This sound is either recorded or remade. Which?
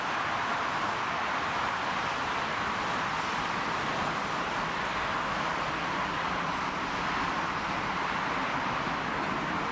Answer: remade